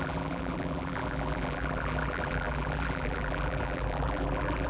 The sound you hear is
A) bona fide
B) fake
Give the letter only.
B